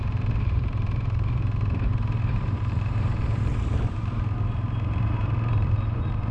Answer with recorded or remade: remade